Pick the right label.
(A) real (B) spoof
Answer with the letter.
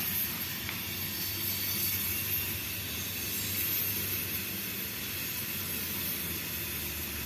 A